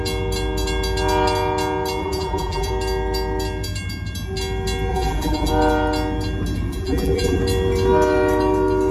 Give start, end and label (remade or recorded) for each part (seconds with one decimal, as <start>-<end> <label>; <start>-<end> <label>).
0.0-2.0 recorded; 2.0-2.7 remade; 2.7-4.9 recorded; 4.9-5.5 remade; 5.5-6.7 recorded; 6.7-7.4 remade; 7.4-8.9 recorded